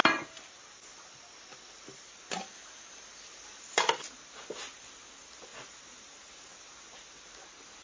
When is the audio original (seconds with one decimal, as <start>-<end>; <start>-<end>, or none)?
0.0-7.8